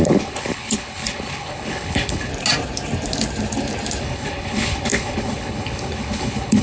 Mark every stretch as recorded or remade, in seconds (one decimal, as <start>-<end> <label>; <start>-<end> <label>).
0.0-2.3 remade; 2.3-4.0 recorded; 4.0-6.6 remade